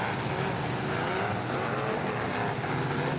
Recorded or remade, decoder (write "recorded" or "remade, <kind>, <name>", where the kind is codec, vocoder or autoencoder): recorded